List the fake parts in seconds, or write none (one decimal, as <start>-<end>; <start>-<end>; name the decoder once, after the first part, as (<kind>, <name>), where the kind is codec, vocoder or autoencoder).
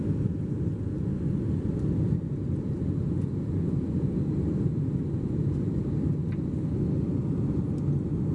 none